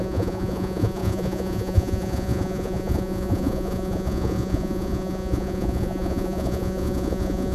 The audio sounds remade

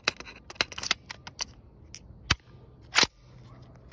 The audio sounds recorded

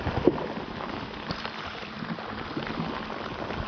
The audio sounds recorded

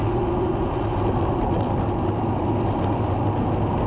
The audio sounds recorded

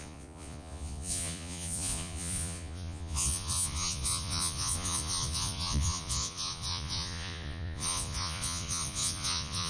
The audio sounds remade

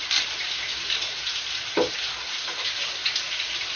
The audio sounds recorded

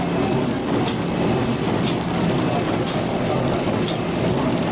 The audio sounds recorded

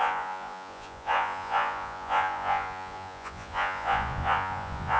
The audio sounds remade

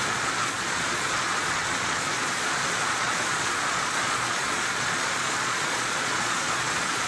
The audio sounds remade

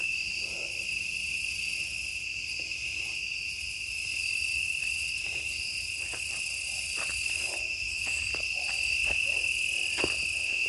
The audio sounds recorded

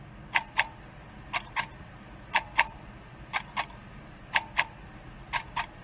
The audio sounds recorded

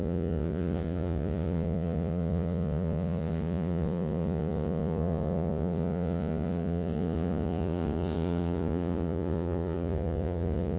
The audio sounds remade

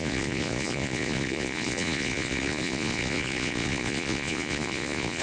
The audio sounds remade